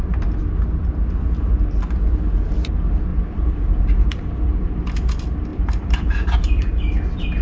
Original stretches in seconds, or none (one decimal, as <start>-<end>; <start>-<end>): 0.0-3.1; 4.8-5.5; 6.7-7.4